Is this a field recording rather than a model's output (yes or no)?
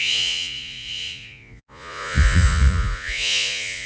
no